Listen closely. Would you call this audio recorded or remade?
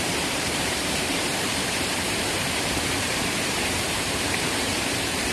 remade